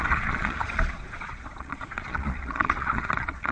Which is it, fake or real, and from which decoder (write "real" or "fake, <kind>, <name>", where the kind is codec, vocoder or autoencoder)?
fake, vocoder, Vocos